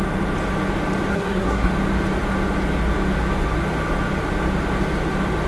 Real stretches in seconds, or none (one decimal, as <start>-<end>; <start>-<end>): 0.0-1.1; 1.7-5.5

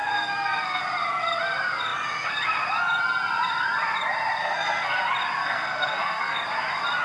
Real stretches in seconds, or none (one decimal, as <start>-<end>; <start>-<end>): 0.8-4.4; 5.0-5.4; 6.4-7.0